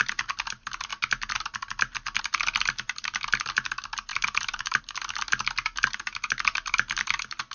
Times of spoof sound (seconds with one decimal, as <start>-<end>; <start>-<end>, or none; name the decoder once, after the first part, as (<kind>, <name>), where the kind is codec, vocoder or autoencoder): 4.1-4.8 (vocoder, BigVGAN v2)